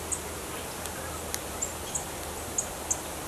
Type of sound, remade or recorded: recorded